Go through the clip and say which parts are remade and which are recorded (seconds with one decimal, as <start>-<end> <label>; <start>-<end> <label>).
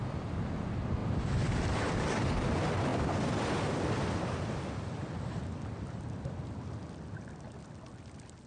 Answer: 0.0-8.5 recorded